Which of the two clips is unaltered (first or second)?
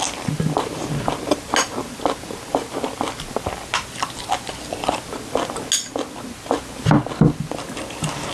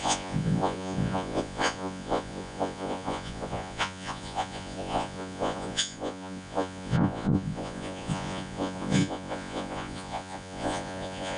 first